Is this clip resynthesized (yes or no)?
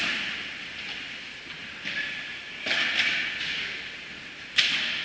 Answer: no